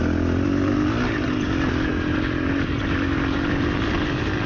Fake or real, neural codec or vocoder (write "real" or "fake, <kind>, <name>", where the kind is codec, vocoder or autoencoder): real